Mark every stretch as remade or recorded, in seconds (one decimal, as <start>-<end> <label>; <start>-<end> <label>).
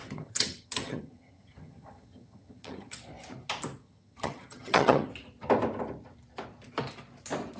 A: 0.0-3.0 remade; 3.0-3.8 recorded; 3.8-5.1 remade; 5.1-7.6 recorded